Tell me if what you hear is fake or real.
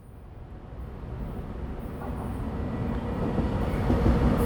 real